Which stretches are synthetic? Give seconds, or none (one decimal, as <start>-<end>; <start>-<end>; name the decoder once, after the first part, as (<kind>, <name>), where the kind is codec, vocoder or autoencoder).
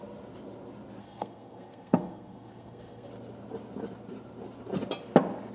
1.0-3.1 (codec, SNAC)